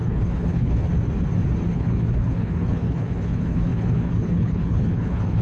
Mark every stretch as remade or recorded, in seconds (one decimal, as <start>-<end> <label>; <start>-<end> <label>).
0.0-0.9 remade; 0.9-1.7 recorded; 1.7-5.4 remade